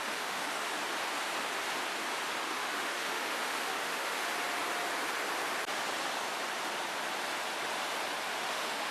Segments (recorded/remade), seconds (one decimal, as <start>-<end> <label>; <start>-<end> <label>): 0.0-0.7 remade; 0.7-2.4 recorded; 2.4-4.2 remade; 4.2-8.3 recorded; 8.3-8.9 remade